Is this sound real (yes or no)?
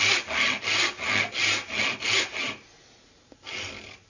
yes